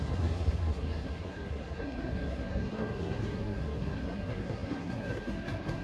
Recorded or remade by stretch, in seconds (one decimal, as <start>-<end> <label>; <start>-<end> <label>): 0.0-5.8 remade